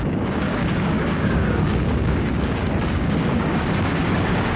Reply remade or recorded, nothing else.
remade